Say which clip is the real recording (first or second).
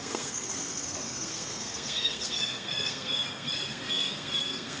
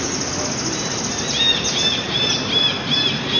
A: second